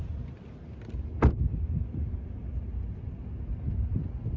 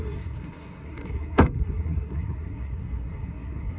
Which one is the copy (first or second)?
second